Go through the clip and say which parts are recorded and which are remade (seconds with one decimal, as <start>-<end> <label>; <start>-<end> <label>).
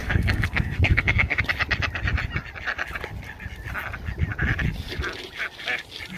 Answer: 0.0-1.4 remade; 1.4-6.2 recorded